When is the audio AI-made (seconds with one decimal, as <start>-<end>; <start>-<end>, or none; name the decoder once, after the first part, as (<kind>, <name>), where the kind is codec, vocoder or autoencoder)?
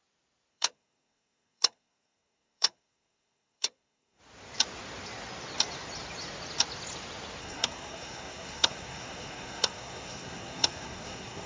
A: 0.5-4.2 (codec, SNAC); 7.4-11.5